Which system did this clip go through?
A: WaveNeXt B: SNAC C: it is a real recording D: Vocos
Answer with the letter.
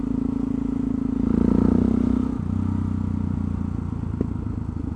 C